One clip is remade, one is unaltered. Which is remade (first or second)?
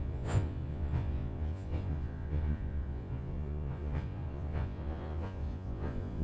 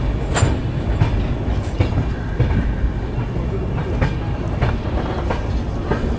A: first